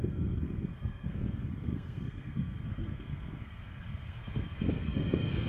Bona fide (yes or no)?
no